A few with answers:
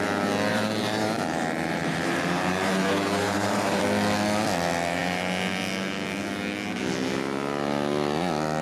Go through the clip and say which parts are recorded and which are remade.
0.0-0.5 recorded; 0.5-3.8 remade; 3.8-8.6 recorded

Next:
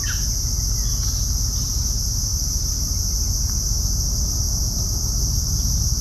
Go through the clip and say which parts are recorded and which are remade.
0.0-6.0 recorded

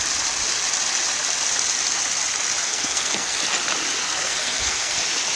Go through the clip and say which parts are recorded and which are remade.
0.0-2.6 recorded; 2.6-3.4 remade; 3.4-4.0 recorded; 4.0-5.0 remade; 5.0-5.4 recorded

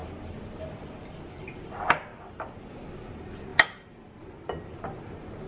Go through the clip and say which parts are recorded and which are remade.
0.0-0.9 remade; 0.9-2.1 recorded; 2.1-2.8 remade; 2.8-5.5 recorded

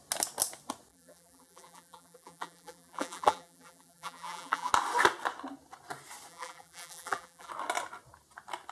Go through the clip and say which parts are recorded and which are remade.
0.0-0.9 recorded; 0.9-4.7 remade; 4.7-6.3 recorded; 6.3-7.5 remade; 7.5-8.7 recorded

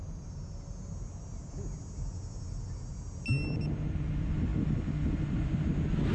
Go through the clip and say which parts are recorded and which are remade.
0.0-6.1 recorded

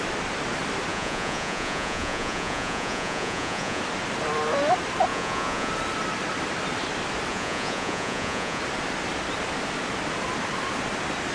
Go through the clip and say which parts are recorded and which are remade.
0.0-0.9 recorded; 0.9-3.8 remade; 3.8-5.1 recorded; 5.1-5.7 remade; 5.7-7.3 recorded; 7.3-8.6 remade; 8.6-11.3 recorded

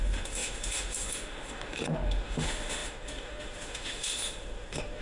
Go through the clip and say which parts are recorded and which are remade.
0.0-5.0 remade